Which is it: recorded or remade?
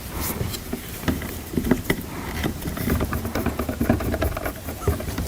remade